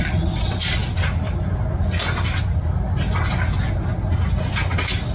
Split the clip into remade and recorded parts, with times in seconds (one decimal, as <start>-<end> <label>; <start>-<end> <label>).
0.0-5.1 recorded